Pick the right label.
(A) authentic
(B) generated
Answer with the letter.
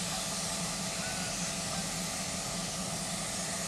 A